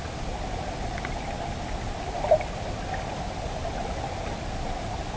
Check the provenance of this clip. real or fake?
real